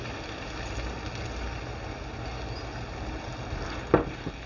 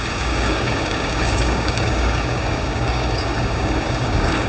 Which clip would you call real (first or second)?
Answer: first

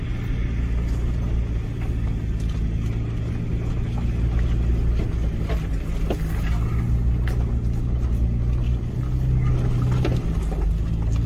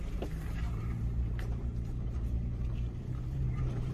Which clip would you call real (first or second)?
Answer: first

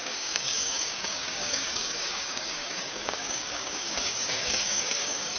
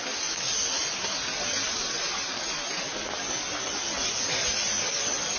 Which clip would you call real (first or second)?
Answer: second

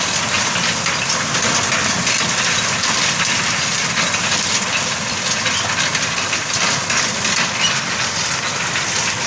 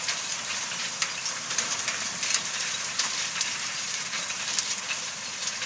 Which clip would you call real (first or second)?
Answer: first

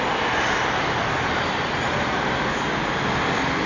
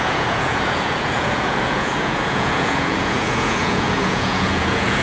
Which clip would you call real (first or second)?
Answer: first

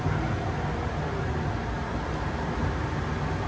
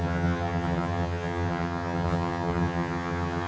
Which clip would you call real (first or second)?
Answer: first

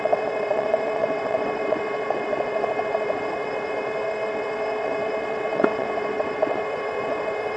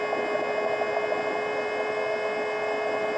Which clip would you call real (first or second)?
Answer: second